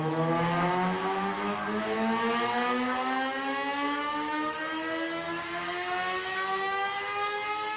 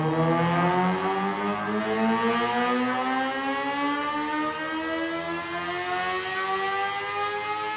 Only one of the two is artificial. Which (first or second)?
first